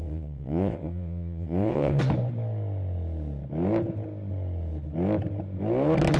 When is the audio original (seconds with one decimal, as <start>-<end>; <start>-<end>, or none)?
2.0-6.2